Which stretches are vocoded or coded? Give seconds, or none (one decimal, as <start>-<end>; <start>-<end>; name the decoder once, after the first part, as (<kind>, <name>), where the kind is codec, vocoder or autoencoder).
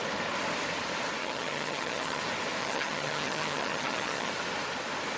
1.2-2.2 (vocoder, HiFi-GAN); 2.6-4.3